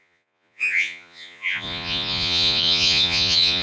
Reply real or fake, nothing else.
fake